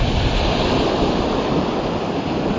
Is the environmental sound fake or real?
real